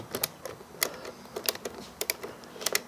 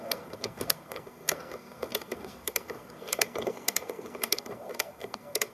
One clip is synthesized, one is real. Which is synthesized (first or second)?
second